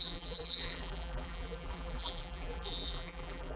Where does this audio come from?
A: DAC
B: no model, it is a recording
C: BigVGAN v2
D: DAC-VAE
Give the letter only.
C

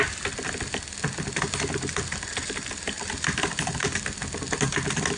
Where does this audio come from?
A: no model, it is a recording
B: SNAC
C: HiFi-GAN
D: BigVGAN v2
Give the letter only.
A